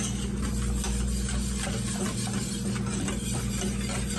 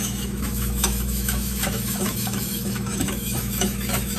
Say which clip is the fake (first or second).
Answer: second